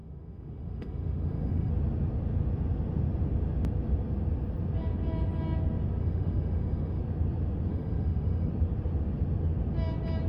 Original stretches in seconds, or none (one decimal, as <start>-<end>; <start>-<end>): 1.7-6.0; 7.0-7.7; 8.5-10.3